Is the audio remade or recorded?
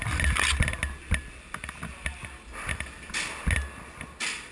recorded